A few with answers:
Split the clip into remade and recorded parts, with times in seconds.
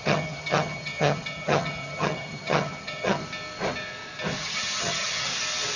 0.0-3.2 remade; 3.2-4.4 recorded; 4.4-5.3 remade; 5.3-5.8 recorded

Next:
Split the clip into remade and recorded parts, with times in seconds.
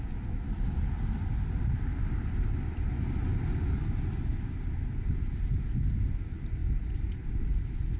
0.0-8.0 recorded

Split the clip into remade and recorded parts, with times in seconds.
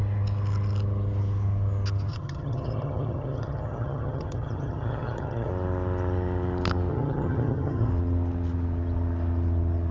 0.0-2.1 recorded; 2.1-5.5 remade; 5.5-6.9 recorded; 6.9-7.9 remade; 7.9-9.9 recorded